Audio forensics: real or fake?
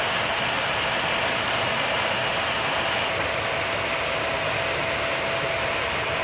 real